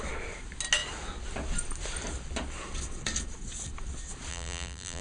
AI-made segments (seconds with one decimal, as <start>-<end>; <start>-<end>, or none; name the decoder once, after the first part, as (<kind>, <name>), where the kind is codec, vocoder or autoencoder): 4.3-5.0 (vocoder, BigVGAN v2)